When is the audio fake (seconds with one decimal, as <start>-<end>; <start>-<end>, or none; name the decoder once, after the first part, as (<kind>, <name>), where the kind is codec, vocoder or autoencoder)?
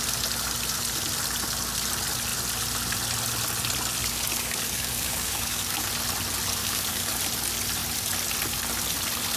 4.0-5.9 (codec, DAC); 6.6-7.1